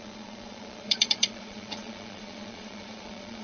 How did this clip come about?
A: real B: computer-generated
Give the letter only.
B